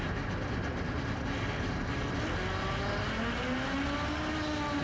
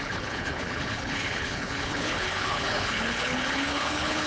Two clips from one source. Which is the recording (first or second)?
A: first